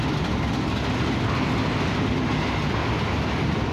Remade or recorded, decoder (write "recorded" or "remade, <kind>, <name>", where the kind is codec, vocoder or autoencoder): recorded